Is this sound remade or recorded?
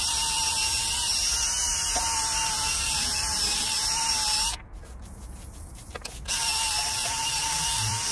remade